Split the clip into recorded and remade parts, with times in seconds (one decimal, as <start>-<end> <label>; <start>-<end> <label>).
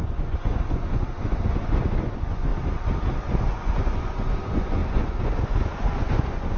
0.0-2.5 remade; 2.5-3.3 recorded; 3.3-6.6 remade